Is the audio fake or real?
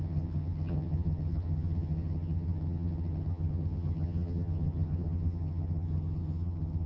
fake